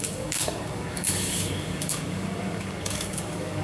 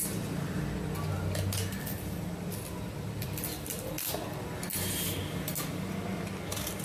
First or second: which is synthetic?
first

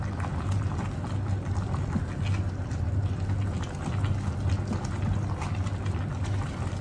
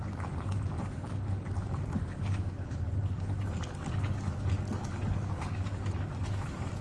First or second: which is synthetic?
second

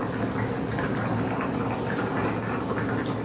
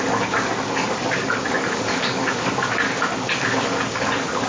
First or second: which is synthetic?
second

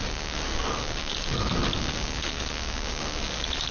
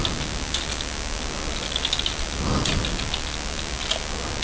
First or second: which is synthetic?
first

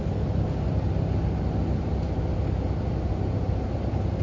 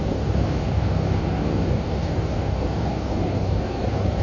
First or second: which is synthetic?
second